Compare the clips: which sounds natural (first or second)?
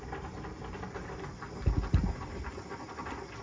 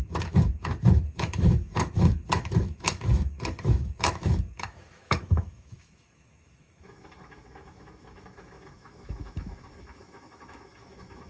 first